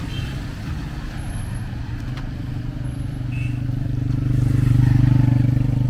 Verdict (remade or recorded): recorded